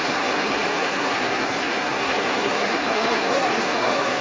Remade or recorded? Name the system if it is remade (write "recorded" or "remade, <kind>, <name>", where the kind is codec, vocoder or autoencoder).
remade, codec, SNAC